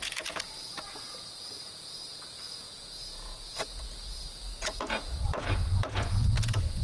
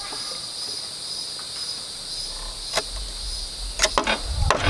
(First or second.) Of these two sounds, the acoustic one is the second